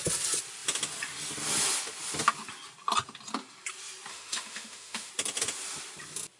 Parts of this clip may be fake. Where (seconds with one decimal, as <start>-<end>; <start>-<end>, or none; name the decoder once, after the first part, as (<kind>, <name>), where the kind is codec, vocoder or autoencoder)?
4.1-5.1 (autoencoder, DAC-VAE)